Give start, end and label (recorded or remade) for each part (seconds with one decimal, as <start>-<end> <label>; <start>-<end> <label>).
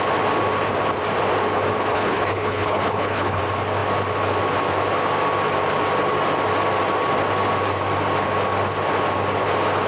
0.0-1.9 recorded; 1.9-3.4 remade; 3.4-9.9 recorded